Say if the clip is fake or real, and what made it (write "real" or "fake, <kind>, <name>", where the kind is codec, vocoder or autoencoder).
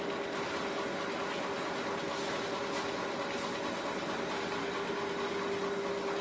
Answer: real